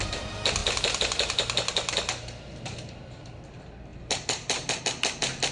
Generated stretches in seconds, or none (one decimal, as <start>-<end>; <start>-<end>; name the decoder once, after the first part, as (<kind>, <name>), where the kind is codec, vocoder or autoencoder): 3.9-4.8 (vocoder, BigVGAN v2)